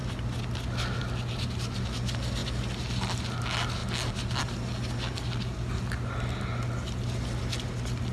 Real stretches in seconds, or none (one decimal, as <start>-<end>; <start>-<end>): 0.0-8.1